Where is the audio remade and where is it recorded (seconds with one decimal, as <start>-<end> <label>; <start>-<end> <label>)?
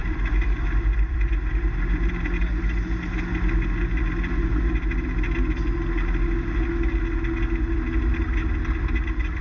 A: 0.0-1.5 remade; 1.5-9.4 recorded